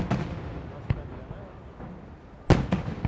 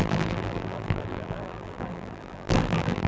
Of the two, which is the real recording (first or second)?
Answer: first